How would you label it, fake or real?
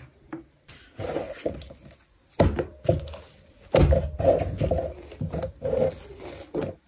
real